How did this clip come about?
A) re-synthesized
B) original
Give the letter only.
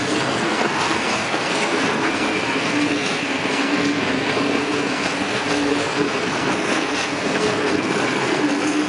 A